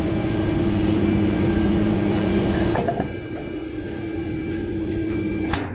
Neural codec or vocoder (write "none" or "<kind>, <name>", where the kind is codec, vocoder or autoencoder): vocoder, Vocos